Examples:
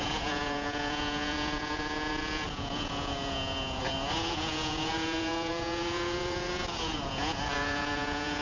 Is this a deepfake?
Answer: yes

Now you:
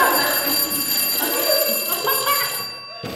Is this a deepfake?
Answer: no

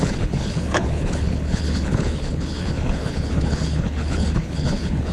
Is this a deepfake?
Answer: yes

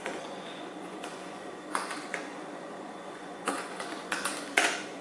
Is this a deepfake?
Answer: yes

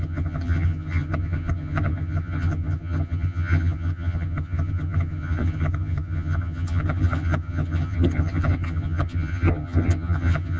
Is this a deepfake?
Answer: yes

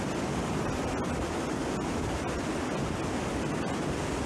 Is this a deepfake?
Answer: no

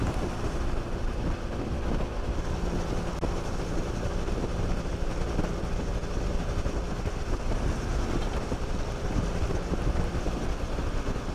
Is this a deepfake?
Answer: no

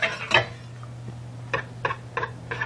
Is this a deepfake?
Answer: no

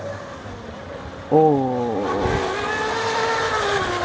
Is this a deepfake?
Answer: no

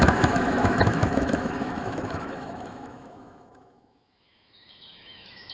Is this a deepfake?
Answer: yes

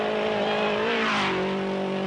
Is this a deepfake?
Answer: no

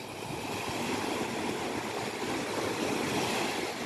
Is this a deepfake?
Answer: no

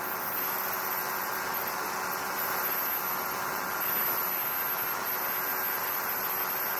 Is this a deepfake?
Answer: no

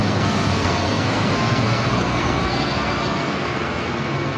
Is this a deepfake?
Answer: yes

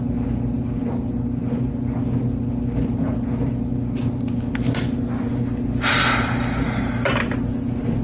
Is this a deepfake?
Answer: no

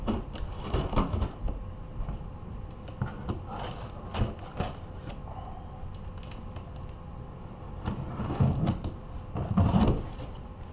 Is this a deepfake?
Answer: no